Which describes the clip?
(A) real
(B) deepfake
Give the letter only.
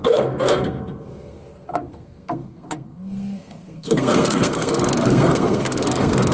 B